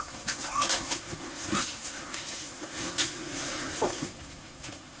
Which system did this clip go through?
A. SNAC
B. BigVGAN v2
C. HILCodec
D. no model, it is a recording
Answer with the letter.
A